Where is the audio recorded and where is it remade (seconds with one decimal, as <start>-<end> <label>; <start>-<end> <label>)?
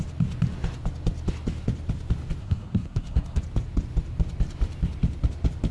0.0-2.4 recorded; 2.4-3.4 remade; 3.4-5.7 recorded